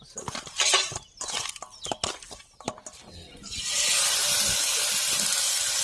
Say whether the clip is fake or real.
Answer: real